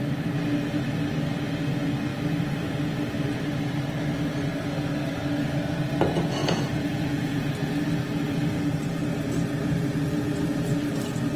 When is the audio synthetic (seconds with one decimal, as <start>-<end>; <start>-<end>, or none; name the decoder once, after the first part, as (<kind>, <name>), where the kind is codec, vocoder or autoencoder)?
6.4-7.5 (vocoder, Vocos)